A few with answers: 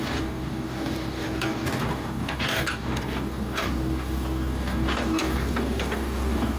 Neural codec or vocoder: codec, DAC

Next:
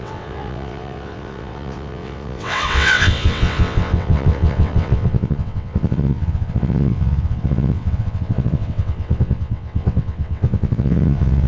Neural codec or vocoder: vocoder, WaveNeXt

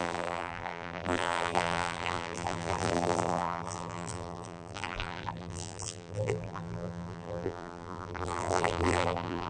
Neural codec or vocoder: vocoder, BigVGAN v2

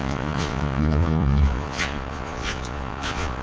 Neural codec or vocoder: vocoder, Vocos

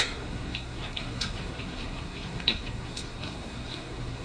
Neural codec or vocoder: codec, SNAC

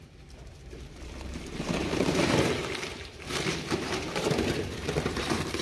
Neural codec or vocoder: vocoder, BigVGAN v2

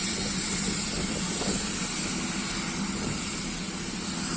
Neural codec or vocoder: none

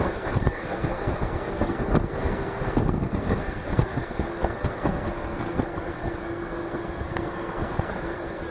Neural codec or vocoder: codec, SNAC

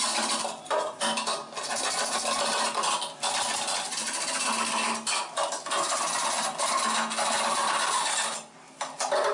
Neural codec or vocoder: none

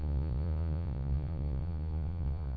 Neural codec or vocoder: vocoder, Vocos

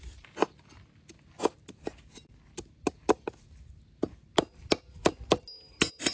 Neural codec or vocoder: none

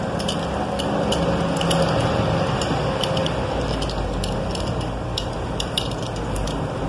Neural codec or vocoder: vocoder, BigVGAN v2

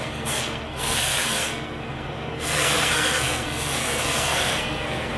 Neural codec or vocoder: codec, SNAC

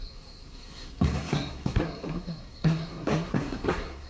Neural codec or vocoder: codec, SNAC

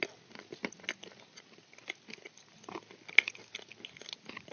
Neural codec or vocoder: none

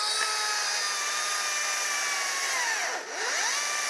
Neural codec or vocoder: none